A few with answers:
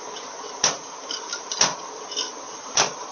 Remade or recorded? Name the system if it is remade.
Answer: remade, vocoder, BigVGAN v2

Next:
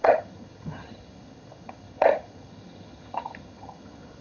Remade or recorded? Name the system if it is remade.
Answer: remade, vocoder, HiFi-GAN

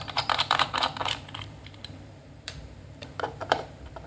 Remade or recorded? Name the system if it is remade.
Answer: remade, vocoder, BigVGAN v2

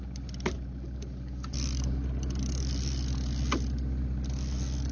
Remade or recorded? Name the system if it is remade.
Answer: recorded